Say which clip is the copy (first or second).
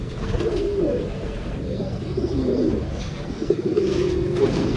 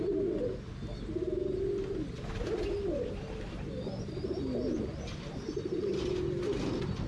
first